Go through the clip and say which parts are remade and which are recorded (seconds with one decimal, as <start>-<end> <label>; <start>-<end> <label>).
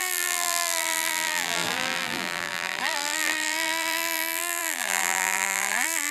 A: 0.0-6.1 remade